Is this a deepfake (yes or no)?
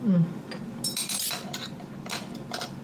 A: no